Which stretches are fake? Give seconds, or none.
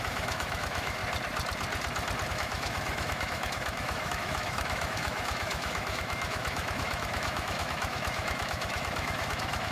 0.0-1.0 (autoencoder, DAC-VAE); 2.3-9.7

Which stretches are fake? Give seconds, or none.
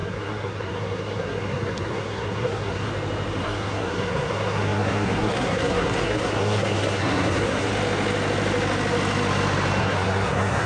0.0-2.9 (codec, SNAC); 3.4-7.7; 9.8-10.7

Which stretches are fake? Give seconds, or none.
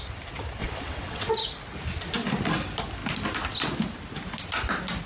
0.6-1.3 (vocoder, WaveNeXt)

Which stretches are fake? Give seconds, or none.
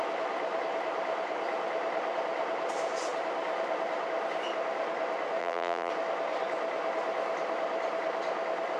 5.4-5.9 (vocoder, BigVGAN v2)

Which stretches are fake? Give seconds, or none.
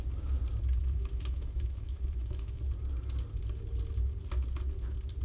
0.8-2.6 (autoencoder, DAC-VAE)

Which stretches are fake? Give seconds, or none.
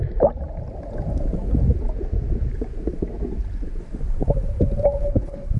5.0-5.6 (codec, HILCodec)